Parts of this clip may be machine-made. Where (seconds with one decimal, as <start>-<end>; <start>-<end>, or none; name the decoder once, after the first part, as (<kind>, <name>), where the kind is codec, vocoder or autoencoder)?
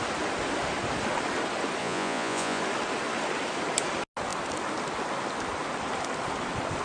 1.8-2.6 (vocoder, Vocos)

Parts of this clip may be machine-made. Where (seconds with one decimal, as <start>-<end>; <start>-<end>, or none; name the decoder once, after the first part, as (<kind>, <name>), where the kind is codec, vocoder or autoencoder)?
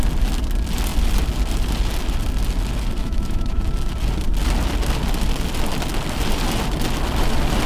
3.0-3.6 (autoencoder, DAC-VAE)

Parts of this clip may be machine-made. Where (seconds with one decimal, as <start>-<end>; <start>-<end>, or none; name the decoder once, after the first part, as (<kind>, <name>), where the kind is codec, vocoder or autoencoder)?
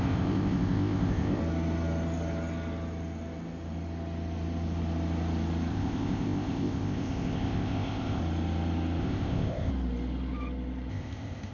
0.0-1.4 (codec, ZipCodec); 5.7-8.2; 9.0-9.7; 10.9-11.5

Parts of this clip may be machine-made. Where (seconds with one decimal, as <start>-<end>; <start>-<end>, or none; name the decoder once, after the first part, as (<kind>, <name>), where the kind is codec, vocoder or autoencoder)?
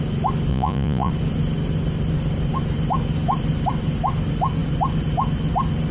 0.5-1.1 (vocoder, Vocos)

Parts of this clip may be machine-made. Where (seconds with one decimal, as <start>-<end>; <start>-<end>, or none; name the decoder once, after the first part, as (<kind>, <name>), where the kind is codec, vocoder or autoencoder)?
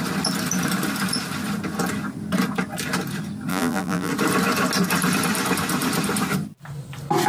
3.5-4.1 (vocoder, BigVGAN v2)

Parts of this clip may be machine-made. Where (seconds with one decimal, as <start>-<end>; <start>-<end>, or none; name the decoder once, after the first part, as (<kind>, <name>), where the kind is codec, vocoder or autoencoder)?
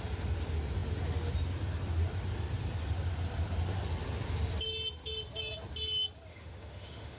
6.3-7.2 (autoencoder, DAC-VAE)